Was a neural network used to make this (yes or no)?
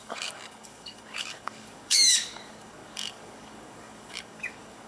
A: yes